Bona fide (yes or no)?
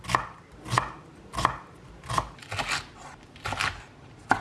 yes